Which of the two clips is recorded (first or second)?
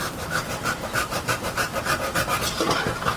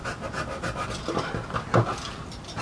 second